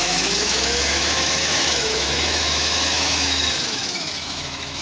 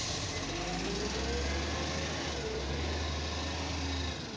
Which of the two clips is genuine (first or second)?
second